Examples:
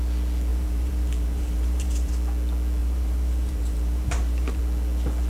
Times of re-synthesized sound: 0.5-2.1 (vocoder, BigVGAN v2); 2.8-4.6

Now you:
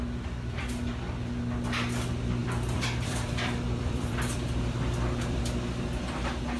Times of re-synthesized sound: 2.4-5.4 (vocoder, BigVGAN v2)

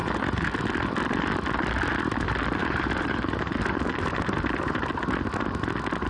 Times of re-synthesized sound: 2.6-4.9 (vocoder, BigVGAN v2)

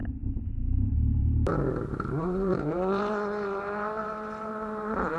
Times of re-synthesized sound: 0.9-1.5 (vocoder, BigVGAN v2); 2.2-5.2

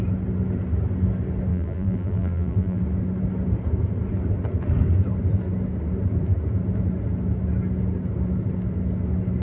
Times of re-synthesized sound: 1.5-2.8 (vocoder, BigVGAN v2)

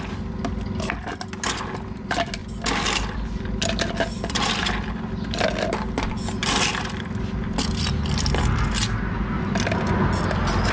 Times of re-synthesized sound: 2.4-4.9 (vocoder, BigVGAN v2)

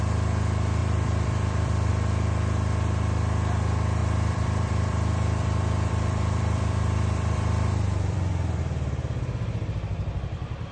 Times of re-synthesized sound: 0.8-1.9 (vocoder, BigVGAN v2); 4.0-8.6

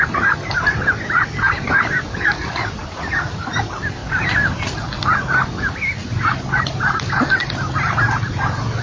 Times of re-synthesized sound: 1.6-3.6 (vocoder, BigVGAN v2)